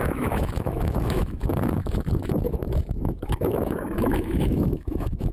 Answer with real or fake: fake